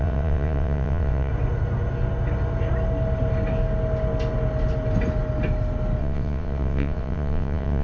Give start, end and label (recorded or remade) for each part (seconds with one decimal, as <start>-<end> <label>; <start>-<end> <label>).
0.0-1.3 remade; 1.3-6.0 recorded; 6.0-7.8 remade